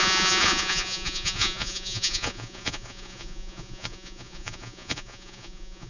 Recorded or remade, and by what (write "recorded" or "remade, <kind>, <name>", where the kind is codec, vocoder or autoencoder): remade, vocoder, Vocos